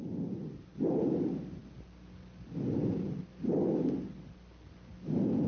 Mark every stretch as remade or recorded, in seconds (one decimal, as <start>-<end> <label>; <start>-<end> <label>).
0.0-0.8 recorded; 0.8-1.6 remade; 1.6-4.9 recorded; 4.9-5.5 remade